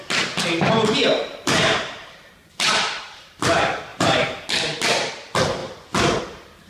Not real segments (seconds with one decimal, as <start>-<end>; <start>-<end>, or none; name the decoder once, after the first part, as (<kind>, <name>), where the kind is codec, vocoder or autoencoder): 1.3-3.2 (vocoder, BigVGAN v2); 3.9-4.5